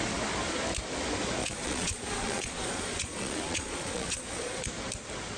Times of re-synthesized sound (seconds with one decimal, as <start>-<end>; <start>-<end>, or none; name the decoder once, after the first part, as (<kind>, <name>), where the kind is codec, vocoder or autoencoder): 1.4-4.6 (vocoder, Vocos)